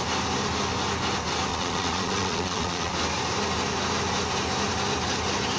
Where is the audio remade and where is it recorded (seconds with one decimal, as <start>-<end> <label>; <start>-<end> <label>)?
0.0-1.5 recorded; 1.5-2.9 remade; 2.9-5.6 recorded

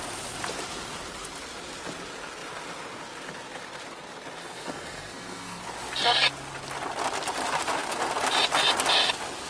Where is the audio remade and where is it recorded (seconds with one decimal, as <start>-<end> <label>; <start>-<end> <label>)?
0.0-4.4 recorded; 4.4-5.6 remade; 5.6-9.5 recorded

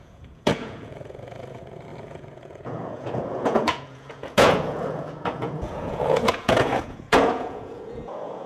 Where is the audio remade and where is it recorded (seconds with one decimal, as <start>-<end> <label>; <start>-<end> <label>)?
0.0-8.5 remade

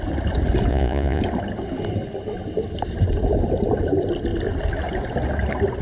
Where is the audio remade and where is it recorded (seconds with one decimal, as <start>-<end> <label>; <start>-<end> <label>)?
0.0-0.7 recorded; 0.7-1.2 remade; 1.2-5.8 recorded

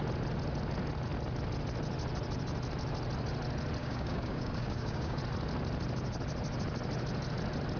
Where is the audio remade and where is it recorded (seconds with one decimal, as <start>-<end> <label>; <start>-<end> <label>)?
0.0-3.8 recorded; 3.8-5.2 remade; 5.2-7.8 recorded

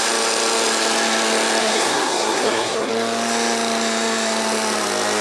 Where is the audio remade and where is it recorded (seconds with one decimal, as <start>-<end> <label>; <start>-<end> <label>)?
0.0-1.6 recorded; 1.6-2.9 remade; 2.9-5.2 recorded

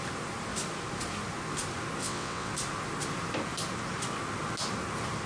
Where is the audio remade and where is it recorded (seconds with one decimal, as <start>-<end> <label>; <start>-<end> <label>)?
0.0-2.0 recorded; 2.0-2.5 remade; 2.5-5.3 recorded

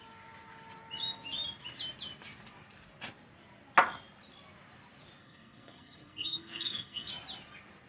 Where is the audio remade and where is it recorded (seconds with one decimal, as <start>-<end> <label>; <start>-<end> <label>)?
0.0-5.2 recorded; 5.2-7.1 remade; 7.1-7.9 recorded